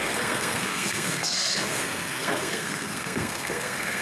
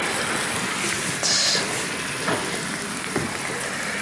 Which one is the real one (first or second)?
second